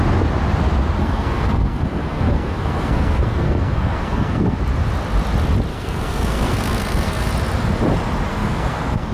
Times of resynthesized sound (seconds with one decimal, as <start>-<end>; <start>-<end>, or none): 1.0-4.6; 5.7-7.3; 8.3-9.1